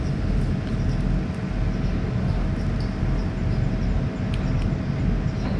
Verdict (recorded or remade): recorded